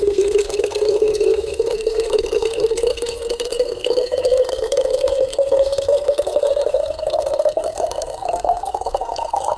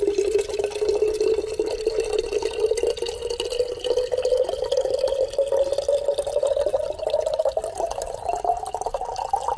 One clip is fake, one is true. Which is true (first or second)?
second